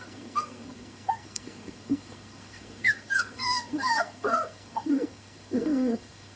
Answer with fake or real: fake